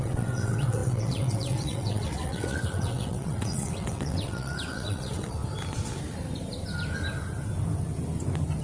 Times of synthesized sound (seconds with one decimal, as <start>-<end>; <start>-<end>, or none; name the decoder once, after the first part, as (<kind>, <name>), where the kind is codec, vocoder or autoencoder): 0.0-5.4 (vocoder, WaveNeXt)